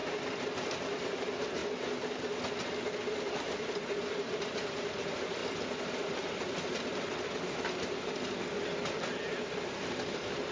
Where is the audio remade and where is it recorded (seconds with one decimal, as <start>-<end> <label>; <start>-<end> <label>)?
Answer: 0.0-1.1 recorded; 1.1-1.6 remade; 1.6-3.1 recorded; 3.1-5.4 remade; 5.4-10.1 recorded; 10.1-10.5 remade